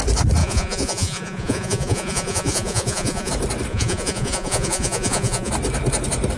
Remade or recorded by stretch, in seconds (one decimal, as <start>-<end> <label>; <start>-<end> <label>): 0.0-0.4 recorded; 0.4-3.3 remade; 3.3-3.7 recorded; 3.7-5.5 remade; 5.5-6.4 recorded

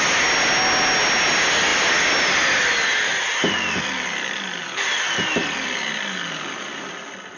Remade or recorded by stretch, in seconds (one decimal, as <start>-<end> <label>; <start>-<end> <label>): 0.0-7.4 recorded